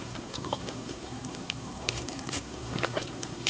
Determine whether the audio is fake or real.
fake